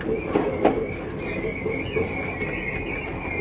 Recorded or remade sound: recorded